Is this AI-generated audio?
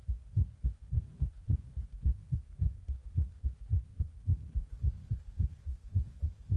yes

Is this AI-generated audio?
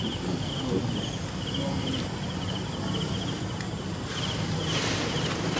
no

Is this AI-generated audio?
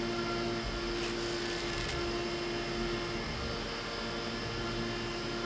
no